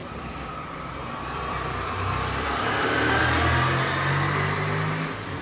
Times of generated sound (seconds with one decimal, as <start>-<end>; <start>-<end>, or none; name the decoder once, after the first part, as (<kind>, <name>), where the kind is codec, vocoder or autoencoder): 0.0-3.2 (vocoder, BigVGAN v2)